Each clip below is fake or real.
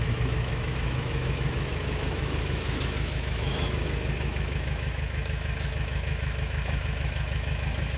fake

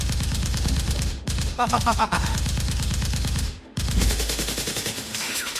fake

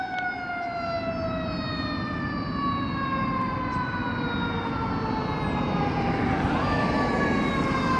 real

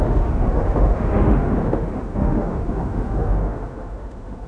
fake